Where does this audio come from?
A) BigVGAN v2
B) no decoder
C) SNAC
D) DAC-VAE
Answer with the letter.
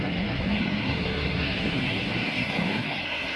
C